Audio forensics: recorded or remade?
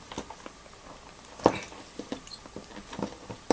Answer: recorded